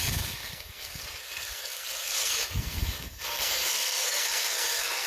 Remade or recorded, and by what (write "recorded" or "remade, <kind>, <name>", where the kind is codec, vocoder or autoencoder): remade, codec, SNAC